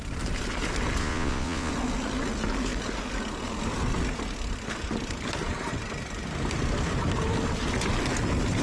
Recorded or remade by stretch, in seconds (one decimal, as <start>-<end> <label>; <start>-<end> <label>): 0.0-1.0 recorded; 1.0-1.7 remade; 1.7-8.6 recorded